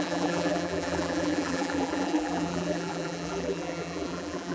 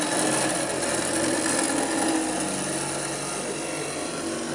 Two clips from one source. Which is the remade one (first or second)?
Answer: first